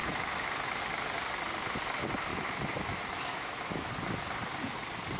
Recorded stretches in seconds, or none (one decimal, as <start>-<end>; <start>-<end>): 0.8-2.3; 3.9-5.2